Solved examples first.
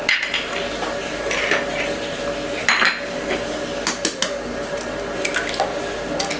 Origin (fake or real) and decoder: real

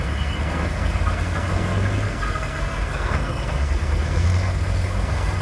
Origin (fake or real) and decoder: fake, codec, SNAC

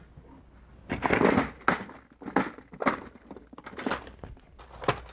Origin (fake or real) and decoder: real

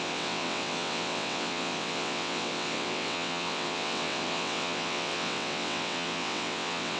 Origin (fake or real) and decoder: fake, vocoder, WaveNeXt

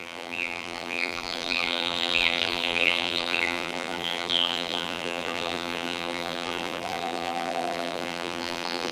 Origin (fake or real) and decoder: fake, vocoder, BigVGAN v2